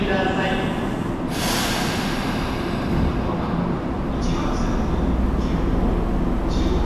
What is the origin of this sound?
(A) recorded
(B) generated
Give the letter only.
A